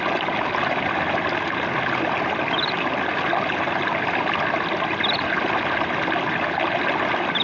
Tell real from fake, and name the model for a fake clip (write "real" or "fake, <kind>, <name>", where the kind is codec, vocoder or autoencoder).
real